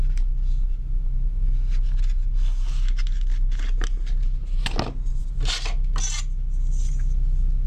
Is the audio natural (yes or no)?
yes